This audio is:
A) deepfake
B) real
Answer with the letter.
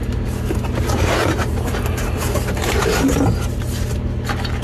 B